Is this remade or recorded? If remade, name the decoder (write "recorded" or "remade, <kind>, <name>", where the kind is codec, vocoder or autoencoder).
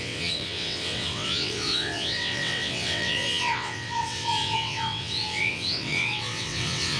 remade, vocoder, WaveNeXt